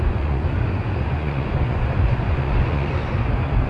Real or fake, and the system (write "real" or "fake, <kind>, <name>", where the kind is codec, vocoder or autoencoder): fake, vocoder, Vocos